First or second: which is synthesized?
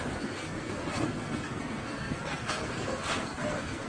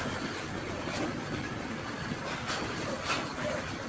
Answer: first